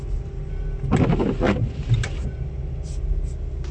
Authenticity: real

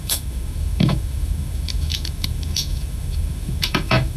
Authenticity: fake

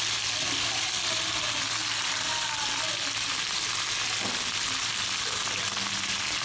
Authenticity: real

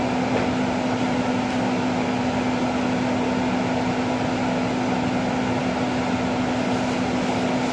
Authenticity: real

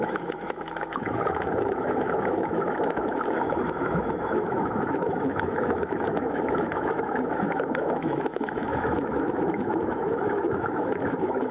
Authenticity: fake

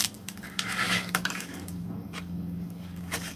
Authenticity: fake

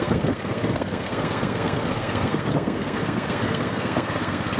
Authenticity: fake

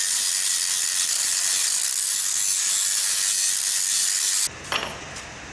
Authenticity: real